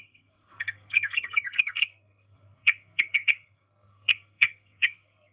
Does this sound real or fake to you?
fake